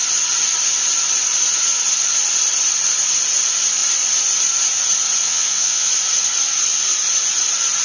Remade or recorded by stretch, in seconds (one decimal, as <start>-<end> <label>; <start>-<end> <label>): 0.0-5.2 recorded; 5.2-5.9 remade; 5.9-7.8 recorded